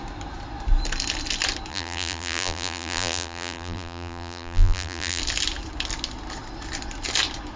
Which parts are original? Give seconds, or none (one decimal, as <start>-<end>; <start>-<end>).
0.0-1.7; 5.2-7.6